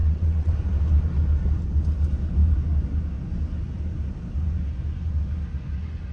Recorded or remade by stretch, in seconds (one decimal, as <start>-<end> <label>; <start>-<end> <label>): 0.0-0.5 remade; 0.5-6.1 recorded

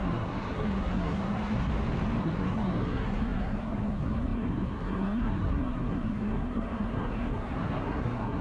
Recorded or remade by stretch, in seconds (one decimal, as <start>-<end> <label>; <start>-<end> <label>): 0.0-1.7 remade; 1.7-2.2 recorded; 2.2-8.4 remade

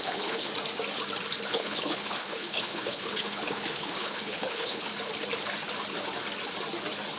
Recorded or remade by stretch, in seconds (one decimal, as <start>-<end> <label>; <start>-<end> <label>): 0.0-0.5 remade; 0.5-1.5 recorded; 1.5-4.9 remade; 4.9-7.2 recorded

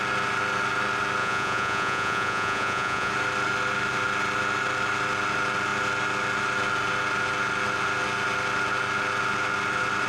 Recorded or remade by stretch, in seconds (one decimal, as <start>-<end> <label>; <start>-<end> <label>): 0.0-1.2 recorded; 1.2-3.1 remade; 3.1-10.1 recorded

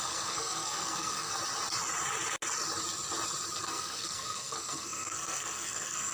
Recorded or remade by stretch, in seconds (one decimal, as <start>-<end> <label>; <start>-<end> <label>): 0.0-1.3 remade; 1.3-3.6 recorded; 3.6-6.1 remade

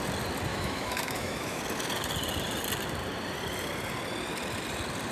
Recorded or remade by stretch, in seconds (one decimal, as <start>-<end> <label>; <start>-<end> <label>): 0.0-0.5 recorded; 0.5-1.6 remade; 1.6-5.1 recorded

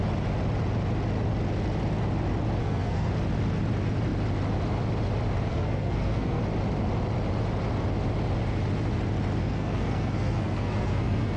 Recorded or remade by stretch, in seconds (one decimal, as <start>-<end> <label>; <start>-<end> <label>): 0.0-2.6 recorded; 2.6-3.1 remade; 3.1-5.5 recorded; 5.5-6.4 remade; 6.4-9.4 recorded; 9.4-11.4 remade